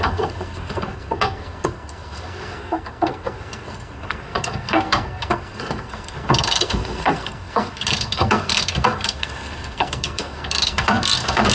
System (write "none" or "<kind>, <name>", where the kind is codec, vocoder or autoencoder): codec, SNAC